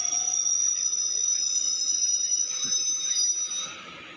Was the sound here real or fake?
real